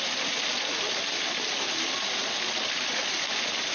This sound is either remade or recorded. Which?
recorded